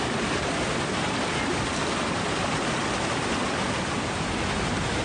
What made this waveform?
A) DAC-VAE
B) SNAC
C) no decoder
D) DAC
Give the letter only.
C